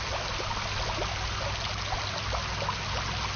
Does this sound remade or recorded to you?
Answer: recorded